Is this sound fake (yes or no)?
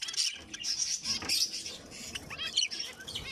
no